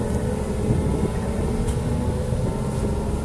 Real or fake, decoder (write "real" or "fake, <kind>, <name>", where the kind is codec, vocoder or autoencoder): real